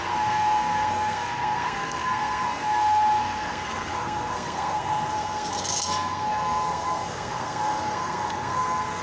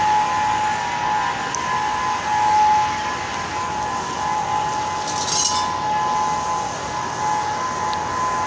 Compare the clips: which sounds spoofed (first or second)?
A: first